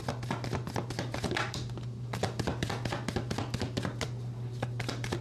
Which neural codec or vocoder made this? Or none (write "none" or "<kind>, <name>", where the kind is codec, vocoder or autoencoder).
none